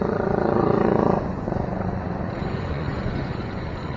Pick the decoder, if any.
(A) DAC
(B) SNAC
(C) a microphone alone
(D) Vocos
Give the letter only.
D